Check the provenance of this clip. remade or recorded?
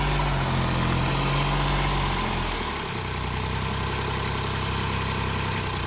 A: recorded